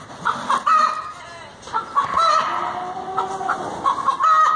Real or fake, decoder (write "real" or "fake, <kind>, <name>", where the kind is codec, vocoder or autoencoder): real